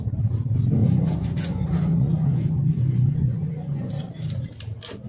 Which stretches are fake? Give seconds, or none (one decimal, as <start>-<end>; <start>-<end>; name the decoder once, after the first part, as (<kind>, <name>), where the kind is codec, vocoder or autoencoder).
0.8-3.9 (vocoder, Vocos)